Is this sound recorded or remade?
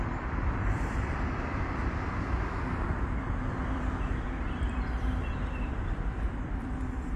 remade